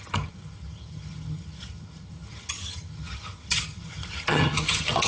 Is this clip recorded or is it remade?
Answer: remade